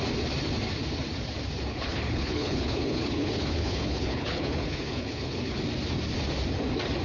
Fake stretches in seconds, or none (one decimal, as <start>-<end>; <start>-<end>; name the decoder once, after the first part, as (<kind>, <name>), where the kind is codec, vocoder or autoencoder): 1.7-5.6 (codec, HILCodec)